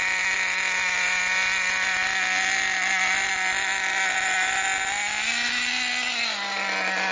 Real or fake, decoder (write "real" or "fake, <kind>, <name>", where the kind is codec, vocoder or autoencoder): real